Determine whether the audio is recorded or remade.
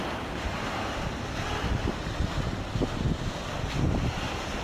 recorded